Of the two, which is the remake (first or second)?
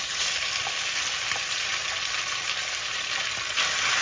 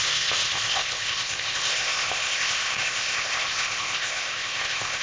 second